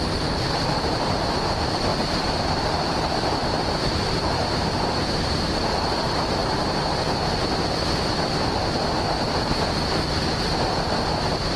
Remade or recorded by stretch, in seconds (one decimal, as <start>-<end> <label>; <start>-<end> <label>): 0.0-1.9 remade; 1.9-2.4 recorded; 2.4-6.4 remade; 6.4-11.6 recorded